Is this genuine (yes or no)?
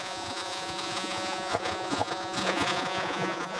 no